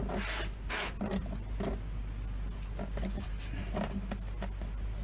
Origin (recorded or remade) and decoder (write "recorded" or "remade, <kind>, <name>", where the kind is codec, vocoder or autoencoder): recorded